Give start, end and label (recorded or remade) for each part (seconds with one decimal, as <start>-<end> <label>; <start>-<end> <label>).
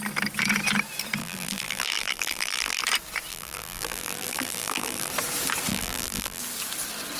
0.0-1.2 recorded; 1.2-2.8 remade; 2.8-3.3 recorded; 3.3-5.1 remade; 5.1-5.7 recorded; 5.7-6.4 remade; 6.4-7.2 recorded